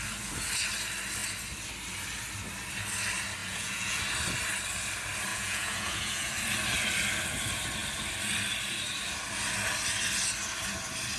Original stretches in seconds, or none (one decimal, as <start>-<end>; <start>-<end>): 0.0-3.4; 4.0-5.3; 6.3-11.2